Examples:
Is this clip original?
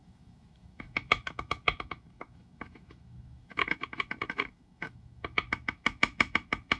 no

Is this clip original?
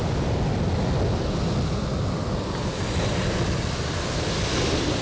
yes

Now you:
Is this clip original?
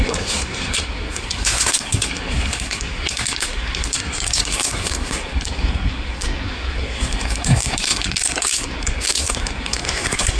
no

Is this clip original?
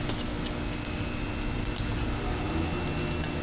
yes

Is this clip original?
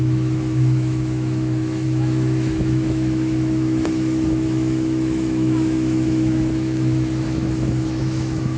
no